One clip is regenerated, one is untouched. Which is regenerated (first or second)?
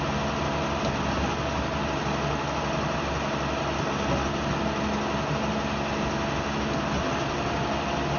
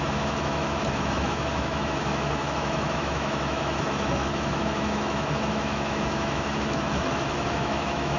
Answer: second